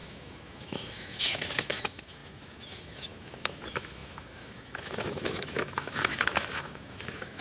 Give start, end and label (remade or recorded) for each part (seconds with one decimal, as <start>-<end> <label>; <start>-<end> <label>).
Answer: 0.0-7.4 remade